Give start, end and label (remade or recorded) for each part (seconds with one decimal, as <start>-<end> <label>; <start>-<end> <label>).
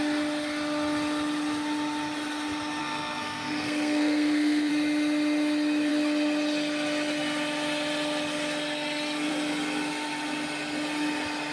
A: 0.0-2.8 recorded; 2.8-4.7 remade; 4.7-11.5 recorded